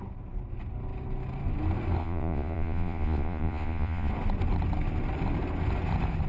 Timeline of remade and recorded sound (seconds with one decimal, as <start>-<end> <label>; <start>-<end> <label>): 0.0-2.0 recorded; 2.0-4.1 remade; 4.1-6.3 recorded

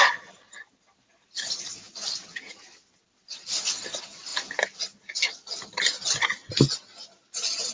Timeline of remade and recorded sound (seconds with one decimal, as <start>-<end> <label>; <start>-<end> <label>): 0.0-7.7 recorded

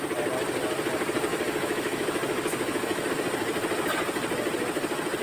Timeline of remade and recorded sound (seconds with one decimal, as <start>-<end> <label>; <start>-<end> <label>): 0.0-1.3 recorded; 1.3-3.1 remade; 3.1-5.2 recorded

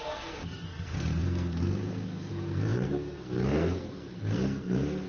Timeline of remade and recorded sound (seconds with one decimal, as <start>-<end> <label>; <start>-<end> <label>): 0.0-5.1 remade

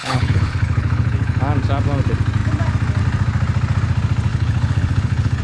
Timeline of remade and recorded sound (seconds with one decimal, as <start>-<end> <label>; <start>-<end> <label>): 0.0-1.4 remade; 1.4-4.3 recorded; 4.3-5.4 remade

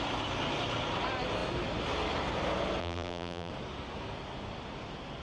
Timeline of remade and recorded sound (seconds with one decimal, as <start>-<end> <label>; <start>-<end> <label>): 0.0-2.8 recorded; 2.8-3.5 remade; 3.5-5.2 recorded

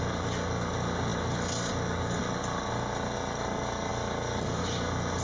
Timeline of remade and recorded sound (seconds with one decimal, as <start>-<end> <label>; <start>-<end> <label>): 0.0-5.2 recorded

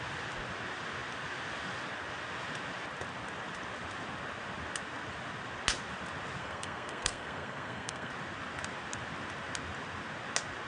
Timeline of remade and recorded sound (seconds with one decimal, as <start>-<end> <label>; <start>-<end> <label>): 0.0-6.4 recorded; 6.4-8.1 remade; 8.1-10.7 recorded